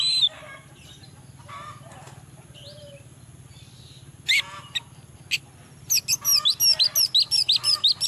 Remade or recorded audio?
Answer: recorded